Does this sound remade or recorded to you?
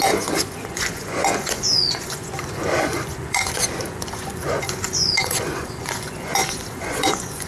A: remade